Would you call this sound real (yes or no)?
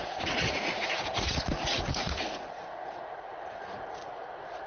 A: no